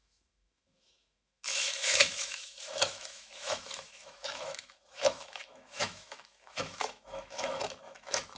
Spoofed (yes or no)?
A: yes